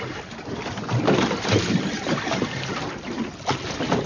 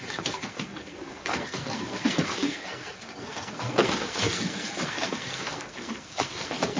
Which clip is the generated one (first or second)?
second